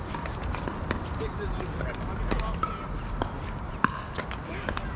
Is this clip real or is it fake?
real